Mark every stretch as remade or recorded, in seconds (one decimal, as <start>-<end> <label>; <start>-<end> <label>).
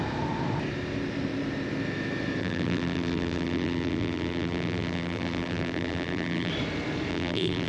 0.0-2.4 recorded; 2.4-6.5 remade; 6.5-7.1 recorded; 7.1-7.7 remade